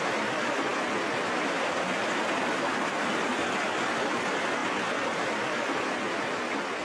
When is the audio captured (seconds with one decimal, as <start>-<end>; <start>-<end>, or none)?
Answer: 0.0-6.8